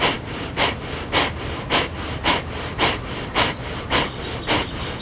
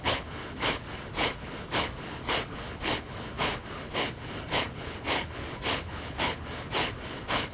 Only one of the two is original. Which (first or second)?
first